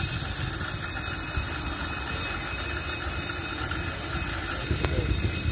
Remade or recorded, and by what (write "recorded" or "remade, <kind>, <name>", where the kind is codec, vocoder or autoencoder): recorded